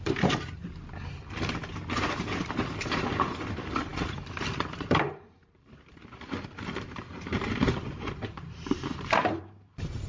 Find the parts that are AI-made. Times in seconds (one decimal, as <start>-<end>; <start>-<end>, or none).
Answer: 0.0-0.6; 2.2-10.1